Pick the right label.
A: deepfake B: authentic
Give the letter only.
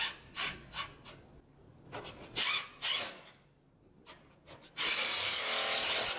B